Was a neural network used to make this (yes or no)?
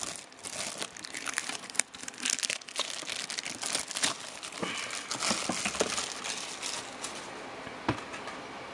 no